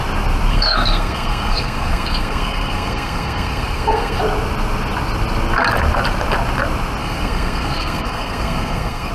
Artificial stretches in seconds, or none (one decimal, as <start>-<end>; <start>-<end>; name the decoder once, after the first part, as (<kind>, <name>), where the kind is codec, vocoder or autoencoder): 0.5-4.2 (codec, SNAC); 7.0-9.1